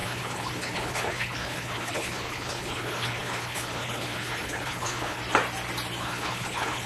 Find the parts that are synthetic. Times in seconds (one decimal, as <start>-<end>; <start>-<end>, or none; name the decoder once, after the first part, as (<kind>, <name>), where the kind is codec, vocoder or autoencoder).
0.0-5.2 (codec, HILCodec); 6.0-6.9